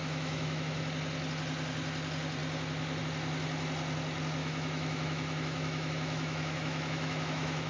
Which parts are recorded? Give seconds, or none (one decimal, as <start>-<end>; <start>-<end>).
0.8-4.4